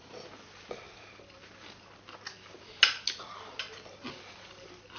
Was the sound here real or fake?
real